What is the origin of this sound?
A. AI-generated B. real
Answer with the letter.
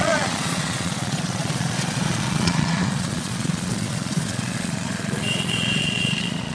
A